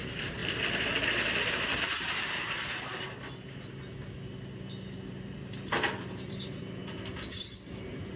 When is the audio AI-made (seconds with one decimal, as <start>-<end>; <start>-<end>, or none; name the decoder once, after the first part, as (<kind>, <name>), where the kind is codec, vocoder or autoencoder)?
0.0-0.4 (vocoder, BigVGAN v2); 1.4-2.6; 5.1-6.8; 7.4-8.2